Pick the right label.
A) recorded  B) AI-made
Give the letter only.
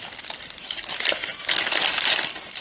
A